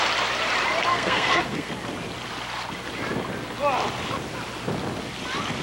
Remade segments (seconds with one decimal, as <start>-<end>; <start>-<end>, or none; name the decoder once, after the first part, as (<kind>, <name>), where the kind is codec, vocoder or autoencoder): 0.9-1.7 (codec, SNAC)